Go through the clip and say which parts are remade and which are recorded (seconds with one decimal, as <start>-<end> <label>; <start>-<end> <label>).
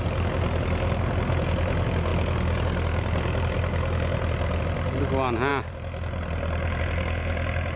0.0-7.8 recorded